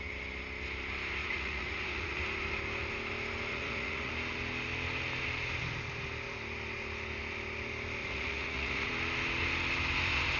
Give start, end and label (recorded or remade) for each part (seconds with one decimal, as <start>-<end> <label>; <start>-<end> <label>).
0.0-1.2 recorded; 1.2-2.2 remade; 2.2-3.5 recorded; 3.5-4.1 remade; 4.1-8.0 recorded; 8.0-8.9 remade; 8.9-10.4 recorded